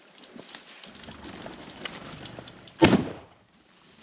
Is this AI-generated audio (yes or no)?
yes